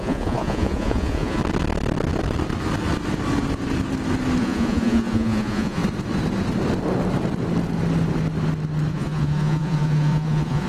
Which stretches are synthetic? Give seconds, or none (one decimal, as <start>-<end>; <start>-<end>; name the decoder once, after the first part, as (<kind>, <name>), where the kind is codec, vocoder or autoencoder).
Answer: 0.0-1.4 (vocoder, Vocos); 4.4-5.8; 8.9-10.7